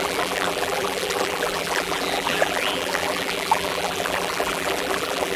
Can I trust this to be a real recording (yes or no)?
no